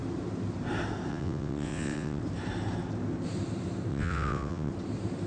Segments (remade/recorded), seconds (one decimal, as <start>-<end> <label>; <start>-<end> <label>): 0.0-1.1 recorded; 1.1-2.2 remade; 2.2-3.9 recorded; 3.9-4.7 remade; 4.7-5.3 recorded